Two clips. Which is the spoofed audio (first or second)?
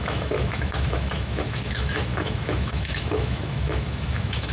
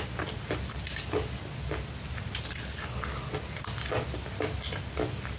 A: first